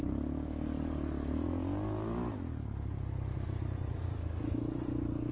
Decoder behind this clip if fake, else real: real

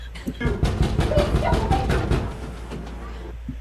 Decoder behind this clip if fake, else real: real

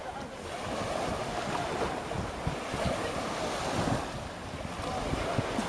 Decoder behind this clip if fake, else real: real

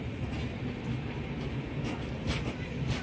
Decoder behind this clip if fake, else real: real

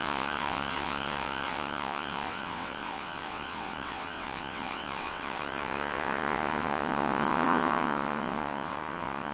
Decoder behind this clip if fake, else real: fake, vocoder, WaveNeXt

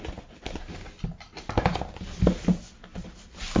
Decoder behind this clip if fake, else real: real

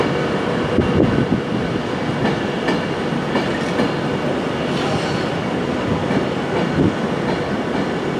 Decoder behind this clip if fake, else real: real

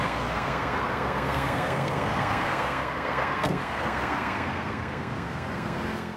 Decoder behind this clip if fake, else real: fake, codec, SNAC